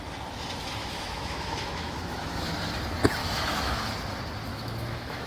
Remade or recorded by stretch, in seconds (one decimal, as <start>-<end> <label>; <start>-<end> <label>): 0.0-0.8 recorded; 0.8-2.5 remade; 2.5-3.2 recorded; 3.2-3.9 remade; 3.9-4.5 recorded; 4.5-5.3 remade